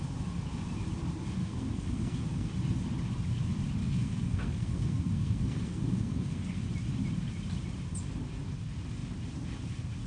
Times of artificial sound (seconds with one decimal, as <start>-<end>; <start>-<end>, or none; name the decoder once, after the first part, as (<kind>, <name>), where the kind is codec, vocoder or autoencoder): 1.4-2.5 (codec, SNAC); 3.8-6.6